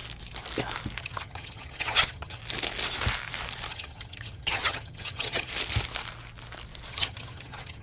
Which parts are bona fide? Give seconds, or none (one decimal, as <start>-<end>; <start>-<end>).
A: 0.0-1.0; 2.4-3.7; 5.5-6.9